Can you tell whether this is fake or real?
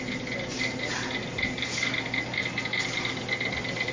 real